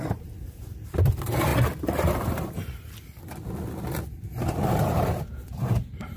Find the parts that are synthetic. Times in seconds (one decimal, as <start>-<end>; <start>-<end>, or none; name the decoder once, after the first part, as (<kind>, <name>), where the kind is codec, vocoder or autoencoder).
0.0-1.5 (vocoder, BigVGAN v2); 4.7-6.2